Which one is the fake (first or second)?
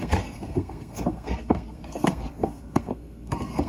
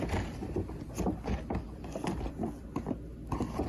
first